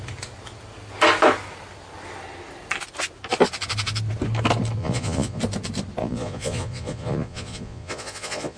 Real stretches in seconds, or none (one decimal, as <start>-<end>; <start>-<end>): 0.0-4.8; 5.4-6.0